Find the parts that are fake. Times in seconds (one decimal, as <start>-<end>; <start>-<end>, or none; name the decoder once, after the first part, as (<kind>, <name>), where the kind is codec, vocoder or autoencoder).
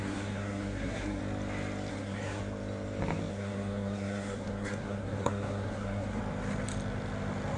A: 0.0-1.2 (codec, SNAC); 1.9-2.4; 3.3-6.2